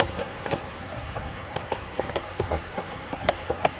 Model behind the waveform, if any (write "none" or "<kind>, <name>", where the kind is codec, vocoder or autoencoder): codec, SNAC